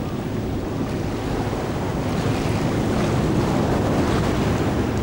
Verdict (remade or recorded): recorded